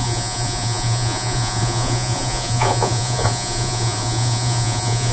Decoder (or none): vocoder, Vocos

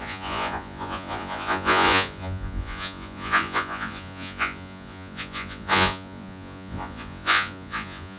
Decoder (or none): vocoder, Vocos